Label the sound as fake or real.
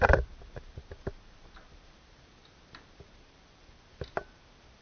real